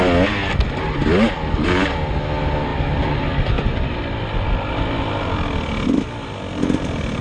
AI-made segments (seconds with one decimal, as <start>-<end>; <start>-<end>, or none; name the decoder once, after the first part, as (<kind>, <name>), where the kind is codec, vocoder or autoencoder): none